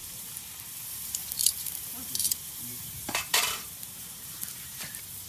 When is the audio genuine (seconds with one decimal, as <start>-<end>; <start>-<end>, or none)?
none